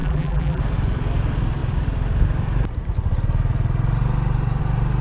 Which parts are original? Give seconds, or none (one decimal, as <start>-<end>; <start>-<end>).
0.6-5.0